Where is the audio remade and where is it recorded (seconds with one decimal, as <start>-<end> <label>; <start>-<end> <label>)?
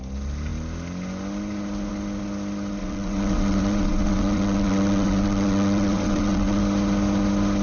0.0-2.8 recorded; 2.8-6.6 remade; 6.6-7.6 recorded